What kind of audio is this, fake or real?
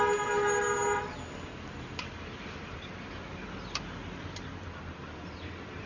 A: real